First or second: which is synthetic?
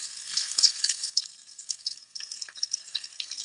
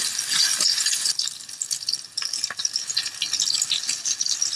first